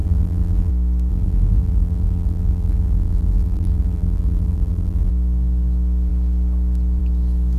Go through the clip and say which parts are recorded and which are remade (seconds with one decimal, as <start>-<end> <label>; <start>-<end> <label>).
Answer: 0.0-0.7 remade; 0.7-1.1 recorded; 1.1-5.1 remade; 5.1-7.6 recorded